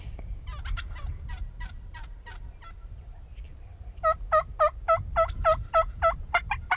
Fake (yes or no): no